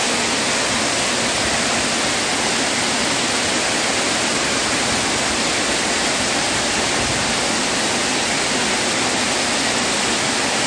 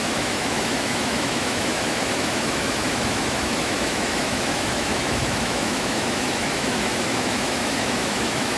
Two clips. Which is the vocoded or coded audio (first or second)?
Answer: second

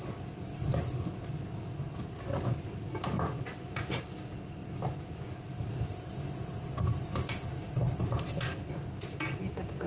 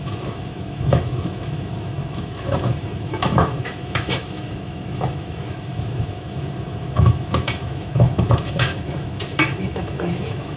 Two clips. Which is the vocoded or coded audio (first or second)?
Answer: second